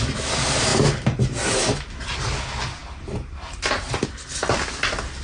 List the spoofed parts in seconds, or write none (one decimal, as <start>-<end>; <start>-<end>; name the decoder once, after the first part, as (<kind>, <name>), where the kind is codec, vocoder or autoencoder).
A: none